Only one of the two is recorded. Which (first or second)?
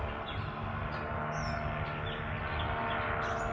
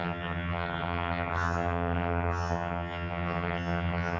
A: first